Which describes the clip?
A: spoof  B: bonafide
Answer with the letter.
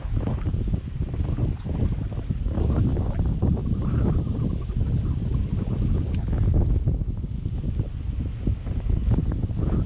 B